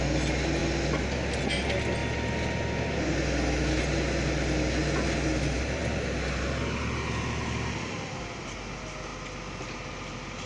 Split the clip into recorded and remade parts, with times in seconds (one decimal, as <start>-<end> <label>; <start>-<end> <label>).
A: 0.0-10.5 recorded